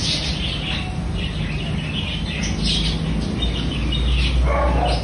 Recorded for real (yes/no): yes